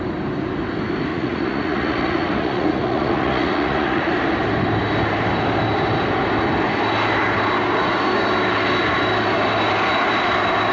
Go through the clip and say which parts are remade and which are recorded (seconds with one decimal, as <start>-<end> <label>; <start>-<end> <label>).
0.0-1.1 recorded; 1.1-4.1 remade; 4.1-10.7 recorded